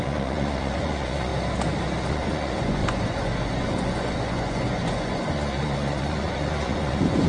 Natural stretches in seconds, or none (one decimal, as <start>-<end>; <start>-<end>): 1.3-2.1